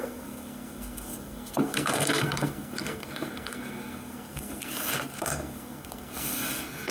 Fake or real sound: fake